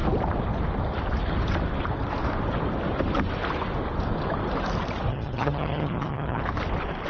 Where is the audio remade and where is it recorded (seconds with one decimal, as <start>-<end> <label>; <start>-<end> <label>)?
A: 0.0-5.1 recorded; 5.1-6.4 remade; 6.4-7.1 recorded